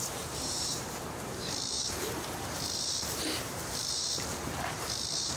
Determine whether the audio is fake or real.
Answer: fake